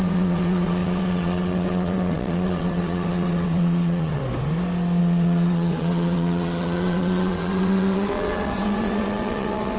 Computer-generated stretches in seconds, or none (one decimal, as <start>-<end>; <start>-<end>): 0.0-4.2; 5.0-9.8